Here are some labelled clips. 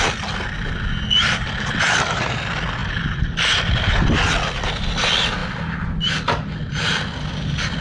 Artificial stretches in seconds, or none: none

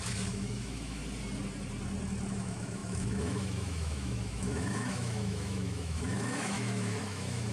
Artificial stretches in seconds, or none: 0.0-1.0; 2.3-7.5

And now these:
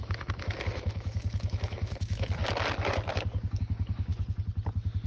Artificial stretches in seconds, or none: 0.0-2.4; 3.6-4.1

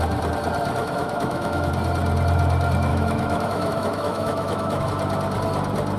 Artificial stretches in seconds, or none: 0.8-1.7; 2.9-4.8